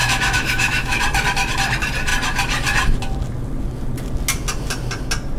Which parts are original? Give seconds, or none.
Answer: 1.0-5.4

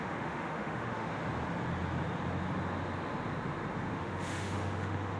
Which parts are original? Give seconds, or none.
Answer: 1.2-3.9

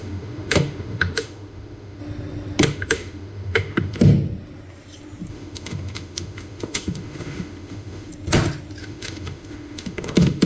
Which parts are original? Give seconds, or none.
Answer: 2.0-2.6; 4.1-5.3; 8.1-8.8

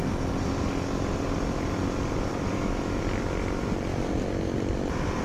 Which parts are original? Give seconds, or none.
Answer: 0.0-2.3; 3.0-5.2